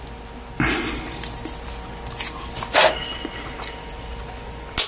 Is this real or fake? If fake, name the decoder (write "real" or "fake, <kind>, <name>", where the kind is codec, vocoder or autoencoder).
real